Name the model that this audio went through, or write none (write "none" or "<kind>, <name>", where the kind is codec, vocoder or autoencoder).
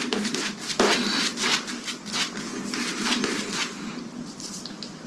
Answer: none